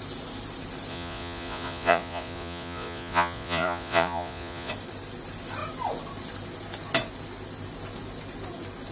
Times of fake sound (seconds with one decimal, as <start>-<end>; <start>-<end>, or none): 0.9-4.7